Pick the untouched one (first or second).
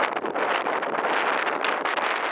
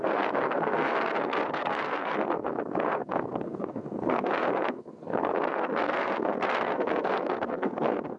first